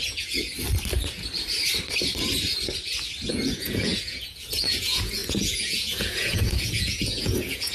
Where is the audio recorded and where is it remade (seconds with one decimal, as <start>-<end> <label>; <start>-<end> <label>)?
0.0-0.5 remade; 0.5-3.3 recorded; 3.3-7.7 remade